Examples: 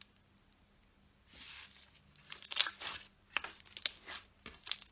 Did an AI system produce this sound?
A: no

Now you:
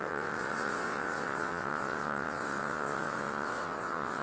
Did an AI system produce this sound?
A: yes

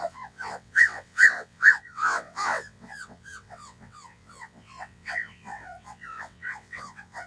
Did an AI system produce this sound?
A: yes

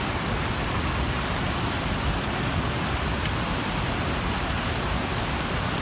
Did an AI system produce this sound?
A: no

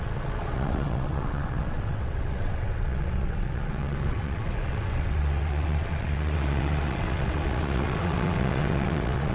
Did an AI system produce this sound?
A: yes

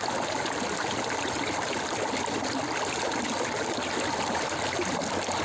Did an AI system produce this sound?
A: no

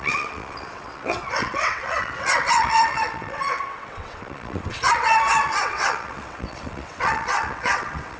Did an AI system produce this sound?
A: yes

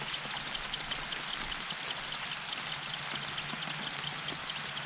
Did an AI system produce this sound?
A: no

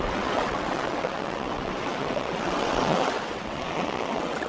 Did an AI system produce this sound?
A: yes